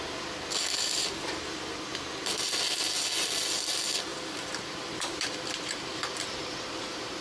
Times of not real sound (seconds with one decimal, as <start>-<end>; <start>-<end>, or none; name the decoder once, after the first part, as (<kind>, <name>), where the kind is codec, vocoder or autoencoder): 4.1-7.2 (vocoder, BigVGAN v2)